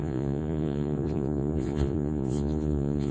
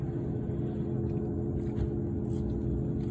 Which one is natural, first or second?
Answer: second